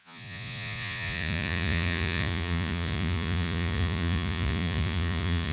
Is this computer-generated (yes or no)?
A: yes